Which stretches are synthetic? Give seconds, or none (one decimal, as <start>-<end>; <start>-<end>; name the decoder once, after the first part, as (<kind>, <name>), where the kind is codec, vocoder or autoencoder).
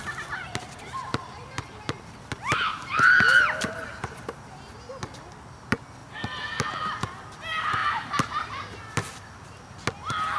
2.7-4.8 (vocoder, BigVGAN v2); 6.0-6.7; 7.8-9.6